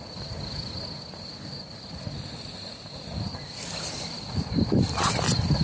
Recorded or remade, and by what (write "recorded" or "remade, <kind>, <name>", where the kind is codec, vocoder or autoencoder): recorded